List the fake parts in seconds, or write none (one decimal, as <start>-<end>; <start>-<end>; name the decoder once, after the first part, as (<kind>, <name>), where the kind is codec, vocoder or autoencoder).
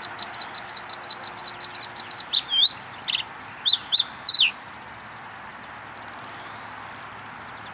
none